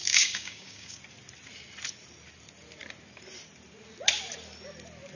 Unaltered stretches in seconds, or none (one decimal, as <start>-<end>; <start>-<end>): 1.0-5.2